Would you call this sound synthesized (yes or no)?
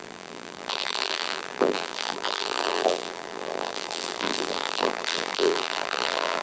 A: yes